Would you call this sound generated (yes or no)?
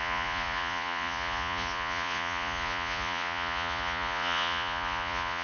yes